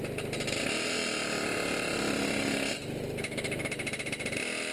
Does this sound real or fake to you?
real